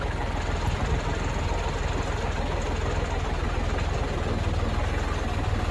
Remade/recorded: recorded